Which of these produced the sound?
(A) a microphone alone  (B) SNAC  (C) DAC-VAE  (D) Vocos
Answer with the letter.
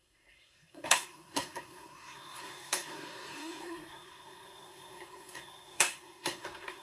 B